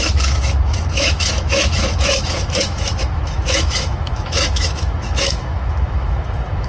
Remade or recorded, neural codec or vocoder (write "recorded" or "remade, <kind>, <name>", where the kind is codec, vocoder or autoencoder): remade, autoencoder, DAC-VAE